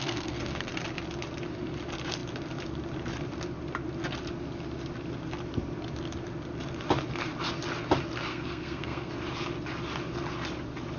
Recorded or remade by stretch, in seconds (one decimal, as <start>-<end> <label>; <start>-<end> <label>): 0.0-0.7 remade; 0.7-8.3 recorded; 8.3-9.1 remade; 9.1-11.0 recorded